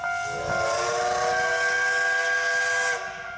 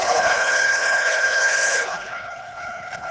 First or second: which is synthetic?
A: second